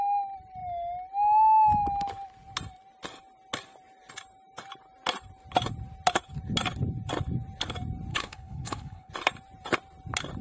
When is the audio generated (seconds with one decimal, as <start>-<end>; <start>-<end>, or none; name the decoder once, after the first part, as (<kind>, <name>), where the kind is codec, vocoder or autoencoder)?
8.1-9.1 (codec, HILCodec)